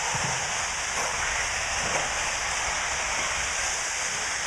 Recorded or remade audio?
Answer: recorded